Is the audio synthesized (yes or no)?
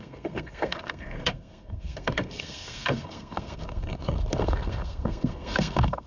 yes